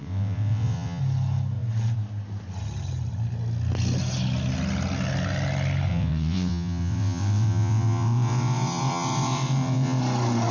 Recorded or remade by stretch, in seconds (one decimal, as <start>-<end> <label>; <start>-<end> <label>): 0.0-1.0 remade; 1.0-5.9 recorded; 5.9-10.0 remade; 10.0-10.5 recorded